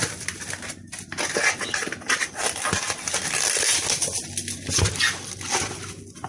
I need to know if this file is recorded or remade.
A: recorded